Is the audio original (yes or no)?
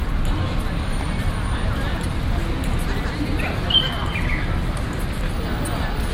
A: yes